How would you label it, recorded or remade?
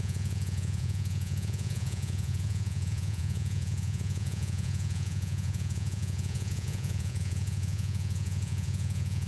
remade